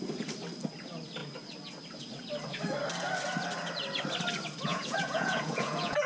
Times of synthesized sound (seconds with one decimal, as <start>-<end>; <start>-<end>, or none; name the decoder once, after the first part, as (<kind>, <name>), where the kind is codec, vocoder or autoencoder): 4.7-6.1 (vocoder, Vocos)

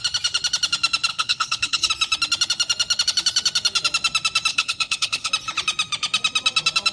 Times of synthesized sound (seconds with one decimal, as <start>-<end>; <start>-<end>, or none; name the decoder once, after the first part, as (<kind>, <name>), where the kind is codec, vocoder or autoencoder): 1.1-1.9 (codec, HILCodec); 4.5-5.3

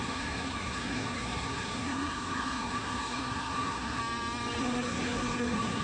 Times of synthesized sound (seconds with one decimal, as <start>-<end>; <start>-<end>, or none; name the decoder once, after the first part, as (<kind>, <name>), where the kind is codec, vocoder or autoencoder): 0.0-4.0 (codec, SNAC); 4.6-5.8

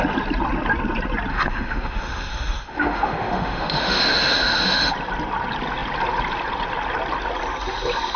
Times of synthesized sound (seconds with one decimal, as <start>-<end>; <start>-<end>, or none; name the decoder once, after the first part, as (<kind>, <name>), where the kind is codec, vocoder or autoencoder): 1.3-4.9 (autoencoder, DAC-VAE)

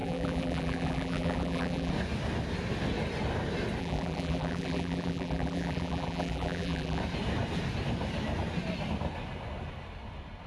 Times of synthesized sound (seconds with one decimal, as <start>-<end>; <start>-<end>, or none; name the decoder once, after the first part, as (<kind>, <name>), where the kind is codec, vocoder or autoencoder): 0.0-1.9 (vocoder, BigVGAN v2); 3.8-7.0

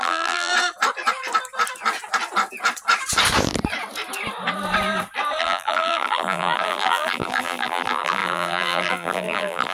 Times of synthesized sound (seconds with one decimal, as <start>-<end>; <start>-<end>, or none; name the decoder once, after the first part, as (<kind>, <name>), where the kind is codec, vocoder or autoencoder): 0.0-0.5 (vocoder, BigVGAN v2); 5.4-9.7